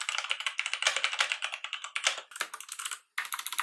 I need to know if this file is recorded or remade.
recorded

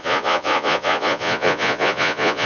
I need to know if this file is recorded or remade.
remade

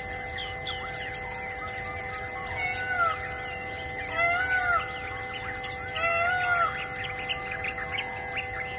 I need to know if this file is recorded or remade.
recorded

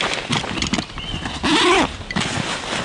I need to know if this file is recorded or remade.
recorded